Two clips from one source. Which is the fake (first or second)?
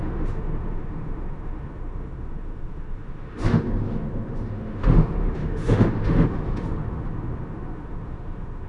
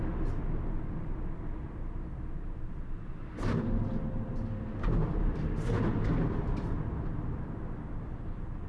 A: first